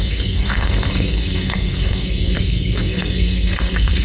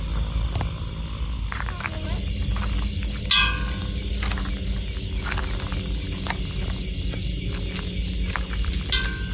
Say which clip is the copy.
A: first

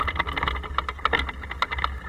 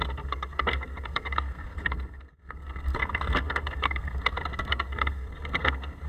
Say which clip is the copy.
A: second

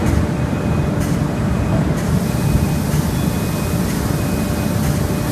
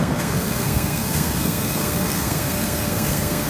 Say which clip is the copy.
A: second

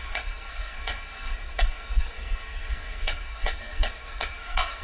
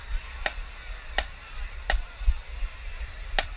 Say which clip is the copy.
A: first